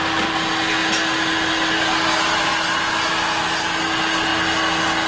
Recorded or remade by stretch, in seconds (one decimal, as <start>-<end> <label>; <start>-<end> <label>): 0.0-5.1 recorded